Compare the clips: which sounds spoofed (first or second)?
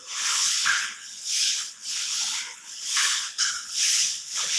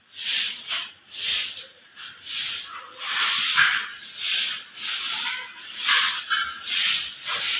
first